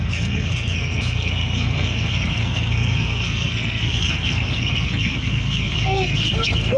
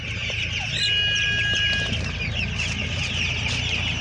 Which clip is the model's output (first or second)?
first